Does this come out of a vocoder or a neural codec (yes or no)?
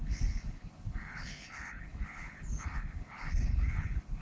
yes